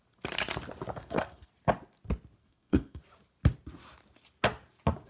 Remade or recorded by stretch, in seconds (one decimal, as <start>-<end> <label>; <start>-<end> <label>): 0.0-0.9 recorded; 0.9-1.5 remade; 1.5-2.4 recorded; 2.4-3.0 remade; 3.0-5.1 recorded